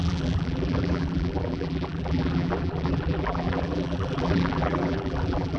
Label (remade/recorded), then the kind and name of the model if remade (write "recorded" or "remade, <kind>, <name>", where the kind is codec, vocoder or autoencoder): remade, vocoder, BigVGAN v2